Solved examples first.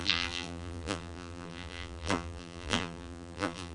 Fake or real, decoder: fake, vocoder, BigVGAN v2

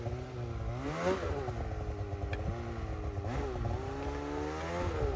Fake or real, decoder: real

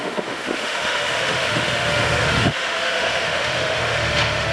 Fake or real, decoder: fake, autoencoder, DAC-VAE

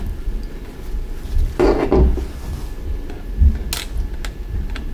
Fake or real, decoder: real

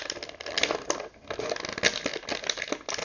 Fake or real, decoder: real